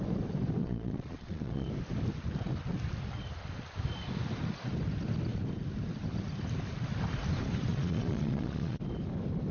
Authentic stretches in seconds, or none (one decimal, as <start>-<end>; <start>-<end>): 0.0-0.6; 1.7-7.7; 8.8-9.5